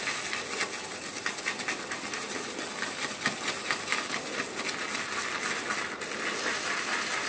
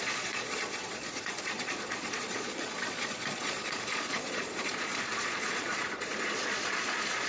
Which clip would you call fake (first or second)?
second